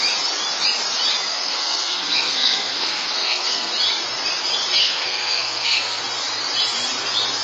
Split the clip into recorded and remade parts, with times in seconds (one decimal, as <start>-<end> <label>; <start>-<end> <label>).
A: 0.0-1.3 recorded; 1.3-3.7 remade; 3.7-4.8 recorded; 4.8-6.0 remade; 6.0-7.4 recorded